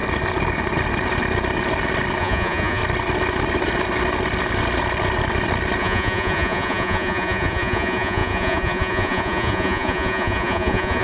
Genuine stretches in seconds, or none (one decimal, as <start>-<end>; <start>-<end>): 0.0-2.2; 2.8-5.8